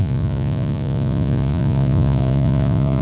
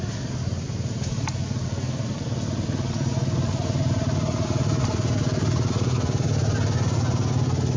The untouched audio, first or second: second